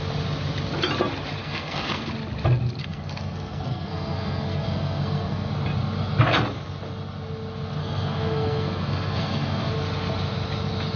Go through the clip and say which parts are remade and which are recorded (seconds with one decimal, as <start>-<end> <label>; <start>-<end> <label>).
0.0-1.4 recorded; 1.4-2.1 remade; 2.1-2.8 recorded; 2.8-5.5 remade; 5.5-7.8 recorded; 7.8-9.7 remade; 9.7-11.0 recorded